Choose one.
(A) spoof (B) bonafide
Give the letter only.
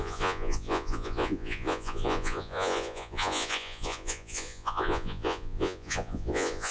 A